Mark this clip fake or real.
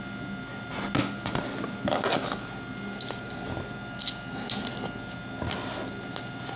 real